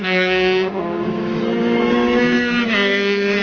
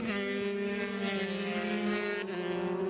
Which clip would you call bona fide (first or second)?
second